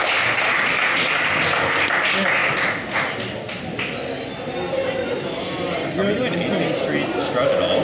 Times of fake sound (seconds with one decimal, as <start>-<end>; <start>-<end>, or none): none